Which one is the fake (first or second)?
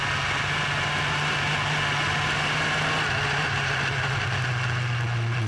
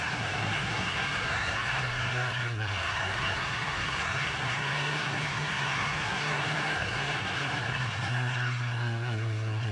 second